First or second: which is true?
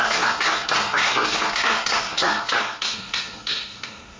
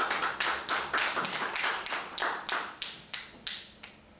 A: second